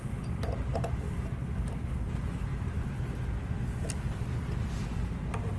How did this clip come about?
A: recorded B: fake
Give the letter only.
A